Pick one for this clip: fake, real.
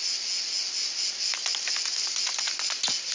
real